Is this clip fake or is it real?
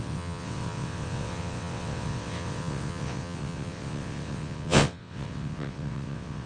fake